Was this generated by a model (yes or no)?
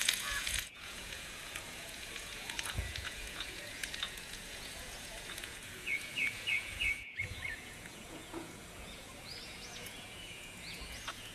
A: yes